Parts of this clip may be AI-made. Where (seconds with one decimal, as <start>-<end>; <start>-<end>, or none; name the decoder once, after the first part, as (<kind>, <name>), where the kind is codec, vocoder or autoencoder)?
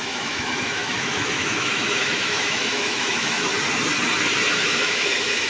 0.0-3.5 (autoencoder, DAC-VAE); 4.6-5.5